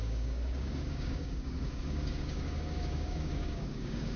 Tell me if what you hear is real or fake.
fake